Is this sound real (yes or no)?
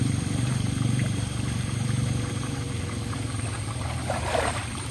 no